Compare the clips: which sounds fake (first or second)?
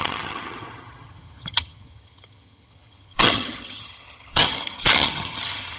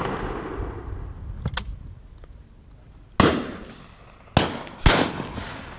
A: first